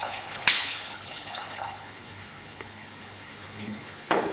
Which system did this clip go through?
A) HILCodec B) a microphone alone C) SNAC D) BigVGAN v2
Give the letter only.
A